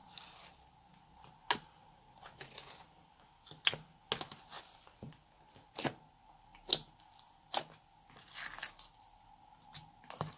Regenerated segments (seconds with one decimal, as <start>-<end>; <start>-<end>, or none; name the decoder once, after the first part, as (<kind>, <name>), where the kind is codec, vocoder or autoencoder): none